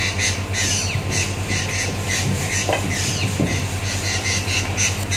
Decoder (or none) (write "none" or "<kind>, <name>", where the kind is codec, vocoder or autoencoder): vocoder, BigVGAN v2